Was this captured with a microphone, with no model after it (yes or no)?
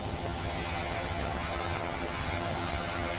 no